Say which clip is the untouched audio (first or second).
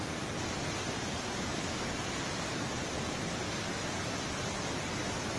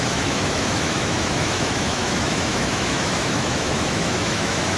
first